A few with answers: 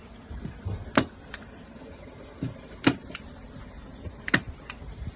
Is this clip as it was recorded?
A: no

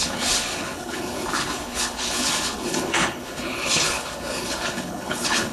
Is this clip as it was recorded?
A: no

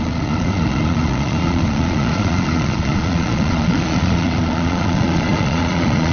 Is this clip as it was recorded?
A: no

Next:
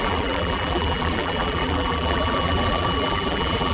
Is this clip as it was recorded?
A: no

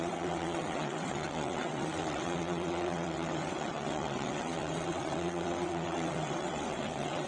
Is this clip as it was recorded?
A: no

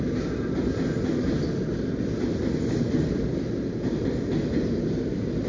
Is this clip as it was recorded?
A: yes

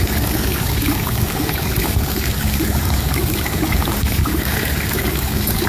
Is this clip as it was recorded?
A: no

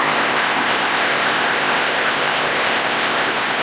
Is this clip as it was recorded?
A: no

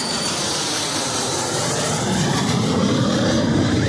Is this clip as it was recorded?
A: no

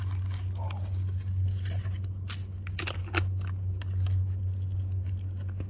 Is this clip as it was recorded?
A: yes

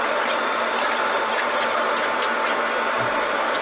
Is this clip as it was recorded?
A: no